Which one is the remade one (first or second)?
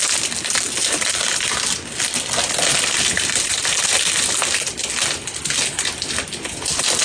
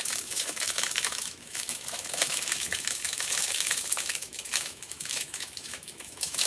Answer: second